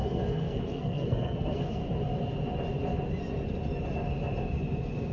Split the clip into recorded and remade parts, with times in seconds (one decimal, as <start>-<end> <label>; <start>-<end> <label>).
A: 0.0-1.8 remade; 1.8-5.1 recorded